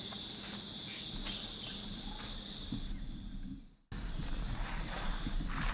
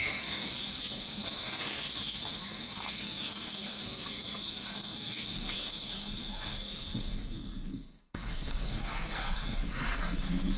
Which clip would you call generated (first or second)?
second